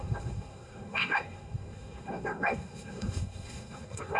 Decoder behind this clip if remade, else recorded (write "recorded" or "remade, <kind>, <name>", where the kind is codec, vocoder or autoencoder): remade, codec, SNAC